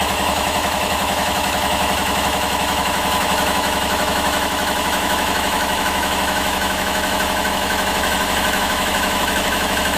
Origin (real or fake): fake